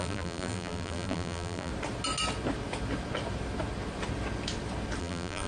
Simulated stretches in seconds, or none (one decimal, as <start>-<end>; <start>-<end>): 0.0-1.7; 5.0-5.5